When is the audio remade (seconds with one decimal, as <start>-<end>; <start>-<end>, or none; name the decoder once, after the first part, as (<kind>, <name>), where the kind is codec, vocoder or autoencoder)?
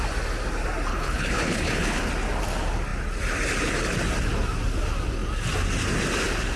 0.9-2.1 (codec, HILCodec)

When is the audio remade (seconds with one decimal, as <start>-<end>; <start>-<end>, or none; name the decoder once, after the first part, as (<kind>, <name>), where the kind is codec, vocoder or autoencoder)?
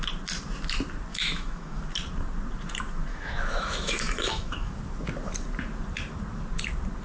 1.1-1.8 (autoencoder, DAC-VAE); 3.1-4.7